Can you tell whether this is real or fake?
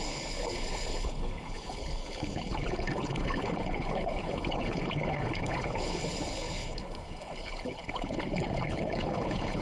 fake